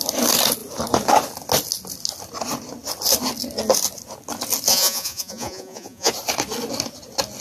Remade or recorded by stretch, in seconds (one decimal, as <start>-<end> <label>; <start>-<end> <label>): 0.0-4.7 recorded; 4.7-6.1 remade; 6.1-7.4 recorded

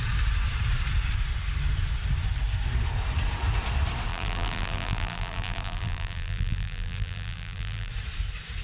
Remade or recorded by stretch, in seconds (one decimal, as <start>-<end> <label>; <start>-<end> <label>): 0.0-4.1 recorded; 4.1-7.9 remade; 7.9-8.6 recorded

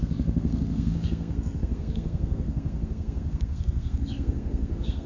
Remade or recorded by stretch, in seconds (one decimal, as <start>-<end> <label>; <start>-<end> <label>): 0.0-5.1 remade

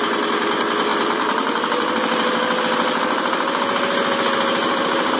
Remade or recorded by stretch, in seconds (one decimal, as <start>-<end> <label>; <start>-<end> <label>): 0.0-0.9 recorded; 0.9-2.6 remade; 2.6-4.6 recorded; 4.6-5.2 remade

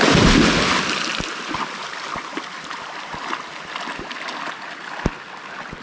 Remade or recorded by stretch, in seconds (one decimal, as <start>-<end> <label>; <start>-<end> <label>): 0.0-5.8 recorded

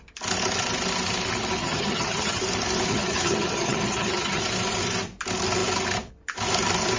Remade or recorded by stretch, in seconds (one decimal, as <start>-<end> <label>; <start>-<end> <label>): 0.0-1.6 recorded; 1.6-2.4 remade; 2.4-2.9 recorded; 2.9-4.4 remade; 4.4-7.0 recorded

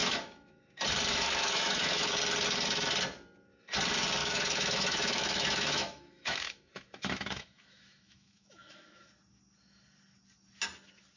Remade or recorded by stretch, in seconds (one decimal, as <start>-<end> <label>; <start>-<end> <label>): 0.0-0.6 remade; 0.6-1.1 recorded; 1.1-2.1 remade; 2.1-4.2 recorded; 4.2-9.1 remade; 9.1-11.2 recorded

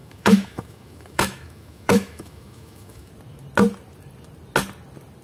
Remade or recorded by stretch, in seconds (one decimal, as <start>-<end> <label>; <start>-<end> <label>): 0.0-3.1 remade; 3.1-5.2 recorded